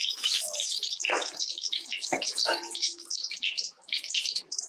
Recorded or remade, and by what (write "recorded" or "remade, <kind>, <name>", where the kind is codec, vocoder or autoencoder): remade, autoencoder, DAC-VAE